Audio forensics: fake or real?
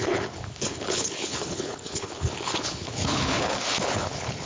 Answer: fake